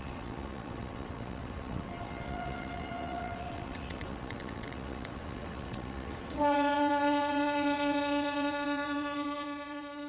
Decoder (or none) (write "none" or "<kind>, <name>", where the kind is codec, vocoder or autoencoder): vocoder, WaveNeXt